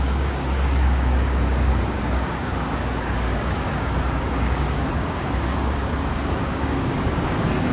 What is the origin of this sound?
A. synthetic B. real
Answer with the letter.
A